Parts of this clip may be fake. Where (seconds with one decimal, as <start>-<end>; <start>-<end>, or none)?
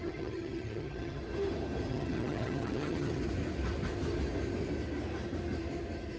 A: 0.0-1.2; 1.9-3.2